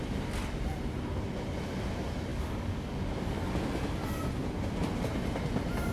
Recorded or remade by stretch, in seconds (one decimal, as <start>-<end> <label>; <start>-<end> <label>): 0.0-2.3 recorded; 2.3-3.5 remade; 3.5-5.9 recorded